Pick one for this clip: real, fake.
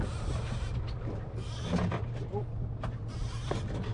real